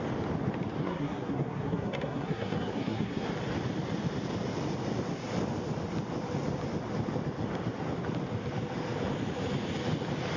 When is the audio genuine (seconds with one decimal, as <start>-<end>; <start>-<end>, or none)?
0.0-0.8; 3.3-10.4